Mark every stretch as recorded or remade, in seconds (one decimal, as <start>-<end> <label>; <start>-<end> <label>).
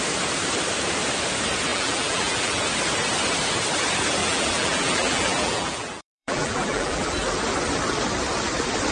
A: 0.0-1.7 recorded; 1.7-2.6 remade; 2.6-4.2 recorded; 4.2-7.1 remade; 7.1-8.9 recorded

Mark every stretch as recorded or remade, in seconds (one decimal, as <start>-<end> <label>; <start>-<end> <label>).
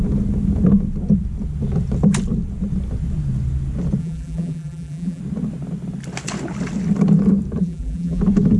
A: 0.0-4.0 recorded; 4.0-5.2 remade; 5.2-7.6 recorded; 7.6-8.2 remade; 8.2-8.6 recorded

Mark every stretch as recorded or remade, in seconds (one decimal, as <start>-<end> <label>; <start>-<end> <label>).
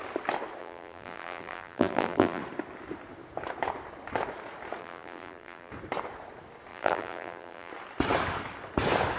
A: 0.0-0.6 recorded; 0.6-2.4 remade; 2.4-4.8 recorded; 4.8-5.7 remade; 5.7-6.7 recorded; 6.7-7.7 remade; 7.7-9.2 recorded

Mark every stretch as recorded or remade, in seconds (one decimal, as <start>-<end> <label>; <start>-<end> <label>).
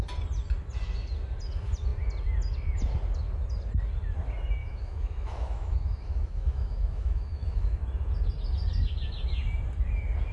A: 0.0-4.6 recorded; 4.6-7.8 remade; 7.8-10.3 recorded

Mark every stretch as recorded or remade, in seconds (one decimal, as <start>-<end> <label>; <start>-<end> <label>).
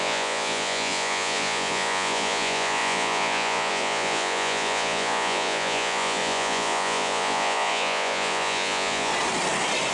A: 0.0-9.1 remade; 9.1-9.9 recorded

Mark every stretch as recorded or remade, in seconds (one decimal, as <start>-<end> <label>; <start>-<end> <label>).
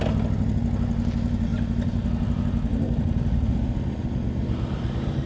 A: 0.0-5.3 recorded